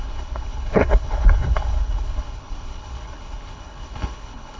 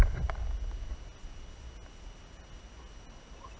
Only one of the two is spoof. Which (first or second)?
first